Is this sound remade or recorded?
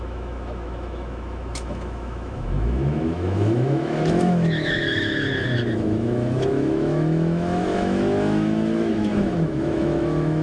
remade